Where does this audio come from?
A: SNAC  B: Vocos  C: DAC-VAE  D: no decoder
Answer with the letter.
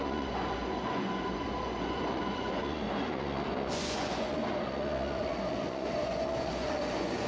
B